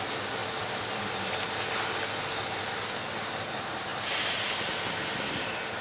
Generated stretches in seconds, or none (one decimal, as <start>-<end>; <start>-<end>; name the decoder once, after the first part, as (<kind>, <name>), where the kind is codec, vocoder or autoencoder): none